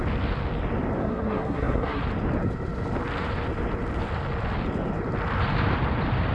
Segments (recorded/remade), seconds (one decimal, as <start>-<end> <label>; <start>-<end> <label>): 0.0-1.0 recorded; 1.0-2.0 remade; 2.0-6.3 recorded